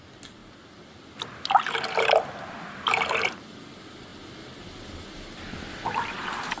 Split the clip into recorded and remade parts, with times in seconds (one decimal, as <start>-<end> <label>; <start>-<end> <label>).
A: 0.0-6.6 recorded